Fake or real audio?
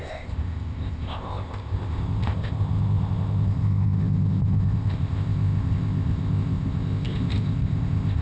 fake